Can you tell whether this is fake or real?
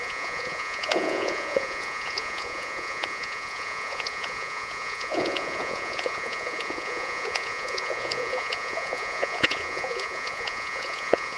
fake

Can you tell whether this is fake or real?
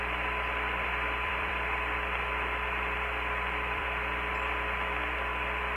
fake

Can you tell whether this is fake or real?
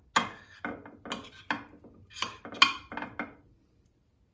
real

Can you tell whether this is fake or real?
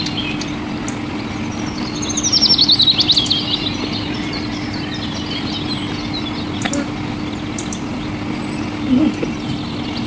real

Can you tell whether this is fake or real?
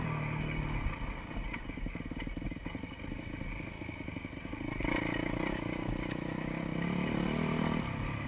real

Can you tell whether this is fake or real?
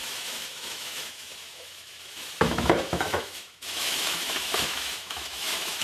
fake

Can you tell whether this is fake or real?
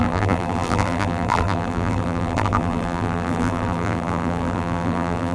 fake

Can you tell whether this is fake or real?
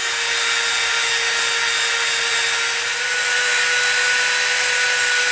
real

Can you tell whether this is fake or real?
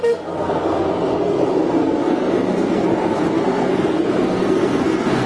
fake